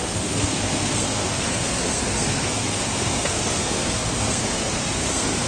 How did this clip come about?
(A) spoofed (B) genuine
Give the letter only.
A